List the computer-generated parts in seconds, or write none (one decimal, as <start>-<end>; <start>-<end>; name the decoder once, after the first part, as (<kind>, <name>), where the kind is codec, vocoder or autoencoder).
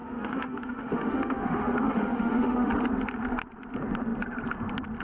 0.0-2.7 (autoencoder, DAC-VAE)